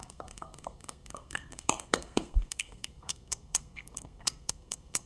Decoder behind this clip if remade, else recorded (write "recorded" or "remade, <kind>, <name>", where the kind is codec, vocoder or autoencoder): remade, codec, SNAC